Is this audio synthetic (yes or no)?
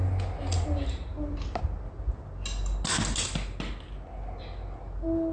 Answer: no